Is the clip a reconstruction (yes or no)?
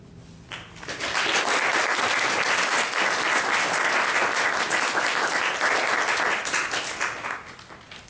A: no